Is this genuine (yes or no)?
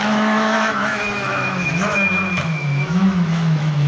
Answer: no